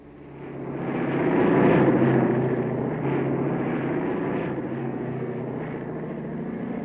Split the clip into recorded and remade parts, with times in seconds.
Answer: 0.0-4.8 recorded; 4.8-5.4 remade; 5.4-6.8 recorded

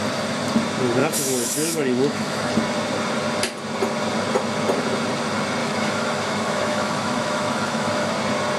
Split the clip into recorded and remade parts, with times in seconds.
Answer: 0.0-1.0 recorded; 1.0-2.5 remade; 2.5-5.6 recorded; 5.6-8.1 remade; 8.1-8.6 recorded

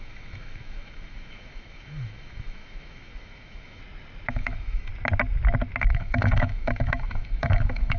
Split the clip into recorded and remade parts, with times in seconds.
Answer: 0.0-3.8 remade; 3.8-4.3 recorded; 4.3-4.9 remade; 4.9-5.8 recorded; 5.8-8.0 remade

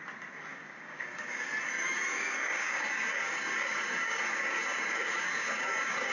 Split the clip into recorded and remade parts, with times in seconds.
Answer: 0.0-0.5 recorded; 0.5-1.5 remade; 1.5-2.1 recorded; 2.1-6.1 remade

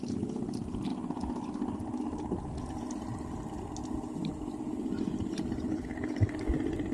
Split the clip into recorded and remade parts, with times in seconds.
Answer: 0.0-5.7 recorded; 5.7-6.3 remade; 6.3-6.9 recorded

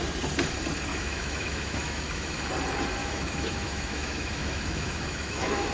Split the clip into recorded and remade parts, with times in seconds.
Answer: 0.0-0.9 recorded; 0.9-2.5 remade; 2.5-3.0 recorded; 3.0-5.7 remade

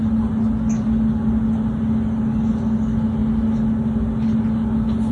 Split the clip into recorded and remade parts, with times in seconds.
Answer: 0.0-5.1 recorded